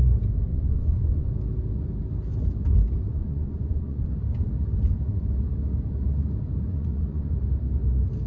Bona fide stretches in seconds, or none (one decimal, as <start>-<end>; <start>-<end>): 0.0-0.5; 1.3-3.1; 4.1-6.7; 7.3-8.3